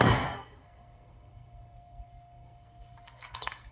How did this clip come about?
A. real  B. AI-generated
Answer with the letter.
B